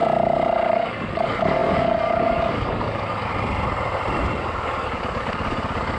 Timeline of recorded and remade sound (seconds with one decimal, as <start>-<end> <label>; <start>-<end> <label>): 0.0-0.7 recorded; 0.7-3.3 remade; 3.3-4.4 recorded; 4.4-6.0 remade